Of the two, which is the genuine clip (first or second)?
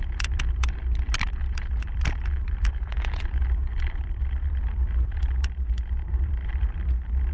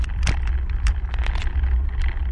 second